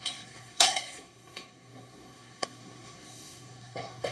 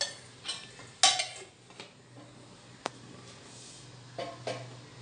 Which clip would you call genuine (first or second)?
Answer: second